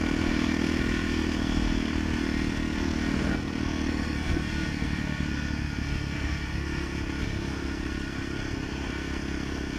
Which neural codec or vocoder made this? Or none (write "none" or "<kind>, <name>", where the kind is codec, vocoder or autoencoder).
codec, SNAC